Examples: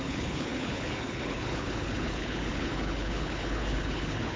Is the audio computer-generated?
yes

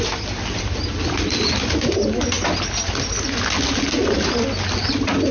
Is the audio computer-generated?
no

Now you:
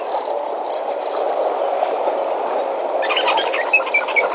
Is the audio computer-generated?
no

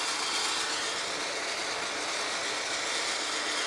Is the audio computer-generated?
no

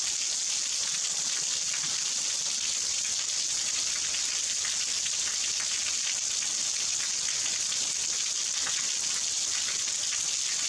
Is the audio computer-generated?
no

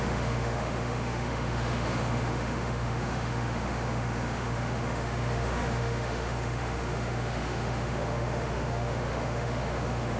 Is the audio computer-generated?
yes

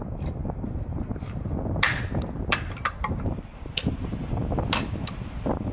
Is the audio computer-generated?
yes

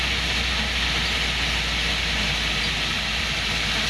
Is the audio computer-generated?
no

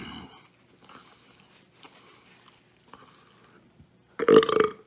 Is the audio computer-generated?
no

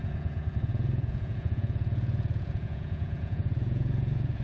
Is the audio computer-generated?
yes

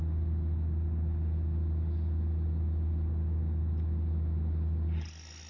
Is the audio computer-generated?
no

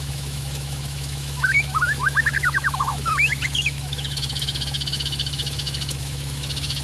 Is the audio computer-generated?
yes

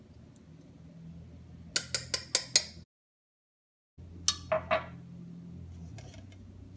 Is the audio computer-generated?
no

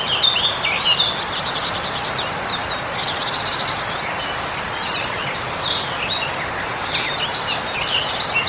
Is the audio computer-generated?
no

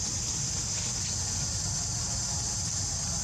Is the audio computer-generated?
no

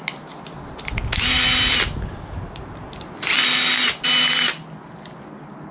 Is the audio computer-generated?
no